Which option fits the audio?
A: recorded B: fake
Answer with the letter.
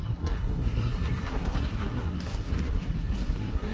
B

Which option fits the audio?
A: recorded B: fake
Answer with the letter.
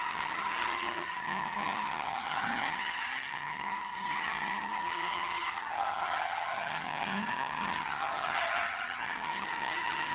B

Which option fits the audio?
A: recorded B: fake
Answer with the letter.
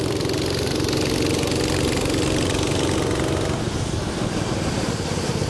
A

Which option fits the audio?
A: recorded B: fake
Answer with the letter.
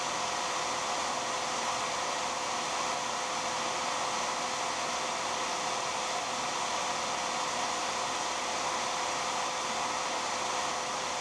A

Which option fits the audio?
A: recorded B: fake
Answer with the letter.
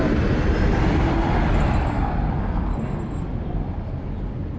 A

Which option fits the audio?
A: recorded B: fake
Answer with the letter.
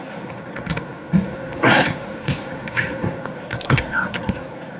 B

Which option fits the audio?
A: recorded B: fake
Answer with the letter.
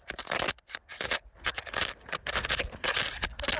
A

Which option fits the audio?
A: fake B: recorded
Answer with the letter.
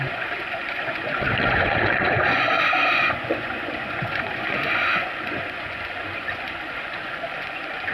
A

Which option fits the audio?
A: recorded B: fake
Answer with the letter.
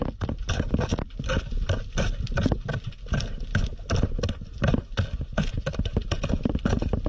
A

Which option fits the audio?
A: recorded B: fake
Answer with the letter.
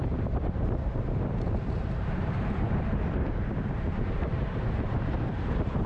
B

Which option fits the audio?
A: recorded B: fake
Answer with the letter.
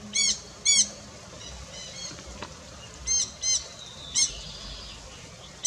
A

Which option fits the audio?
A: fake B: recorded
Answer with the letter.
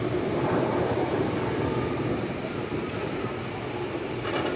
B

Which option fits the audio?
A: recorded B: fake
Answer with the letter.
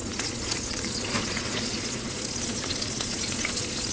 B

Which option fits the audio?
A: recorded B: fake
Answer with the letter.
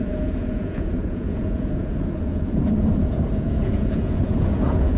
B